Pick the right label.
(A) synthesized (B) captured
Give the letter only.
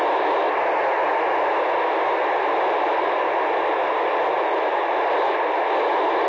B